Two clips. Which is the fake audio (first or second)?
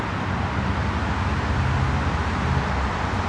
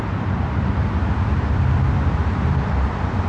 second